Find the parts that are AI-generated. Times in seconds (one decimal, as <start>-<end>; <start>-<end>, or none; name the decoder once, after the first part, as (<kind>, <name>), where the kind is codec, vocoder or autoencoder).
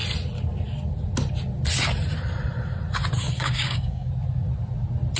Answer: 3.2-4.1 (codec, DAC)